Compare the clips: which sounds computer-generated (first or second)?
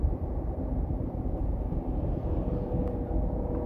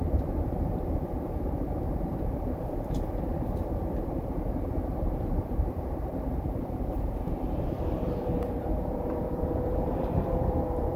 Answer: second